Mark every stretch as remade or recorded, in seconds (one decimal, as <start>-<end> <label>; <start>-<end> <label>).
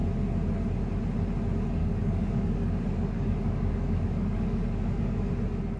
0.0-1.8 recorded; 1.8-5.3 remade; 5.3-5.8 recorded